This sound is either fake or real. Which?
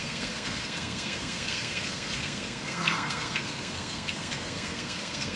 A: fake